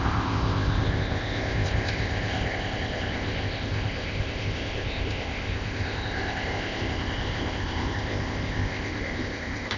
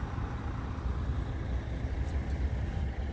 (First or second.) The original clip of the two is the second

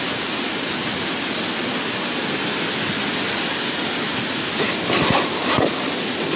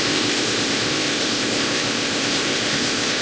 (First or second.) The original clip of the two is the first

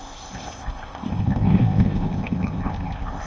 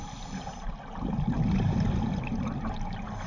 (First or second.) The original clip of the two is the second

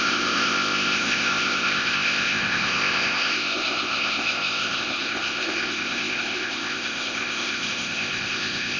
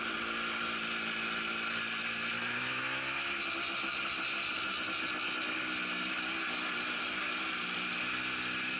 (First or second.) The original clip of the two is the second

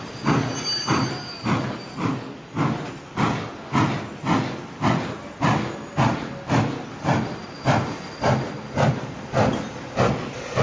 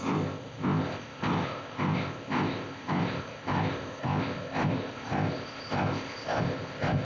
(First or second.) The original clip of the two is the first